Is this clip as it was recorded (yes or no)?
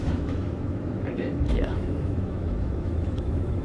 no